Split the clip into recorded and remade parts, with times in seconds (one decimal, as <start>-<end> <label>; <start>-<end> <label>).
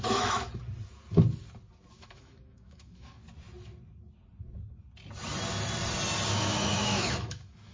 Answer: 0.0-0.6 remade; 0.6-1.9 recorded; 1.9-3.2 remade; 3.2-6.3 recorded; 6.3-7.7 remade